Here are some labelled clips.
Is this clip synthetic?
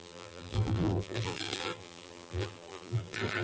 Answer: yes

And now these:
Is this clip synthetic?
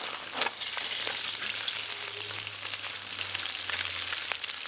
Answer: no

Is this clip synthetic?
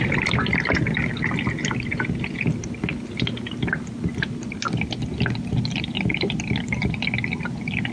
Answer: no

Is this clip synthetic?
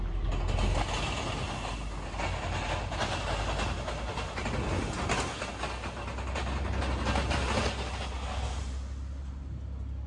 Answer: no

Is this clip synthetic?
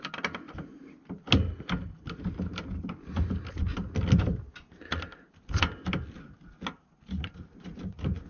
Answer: no